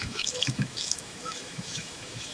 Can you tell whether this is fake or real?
fake